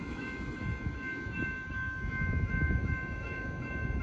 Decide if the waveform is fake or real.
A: fake